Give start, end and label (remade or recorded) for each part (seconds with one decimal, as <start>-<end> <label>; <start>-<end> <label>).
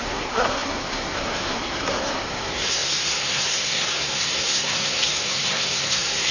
0.0-6.3 remade